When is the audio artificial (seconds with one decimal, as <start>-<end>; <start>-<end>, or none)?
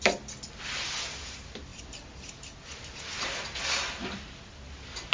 none